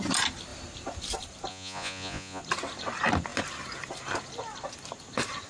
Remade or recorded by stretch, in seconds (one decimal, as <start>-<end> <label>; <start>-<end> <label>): 0.0-1.5 recorded; 1.5-2.4 remade; 2.4-5.5 recorded